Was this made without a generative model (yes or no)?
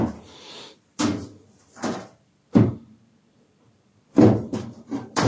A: no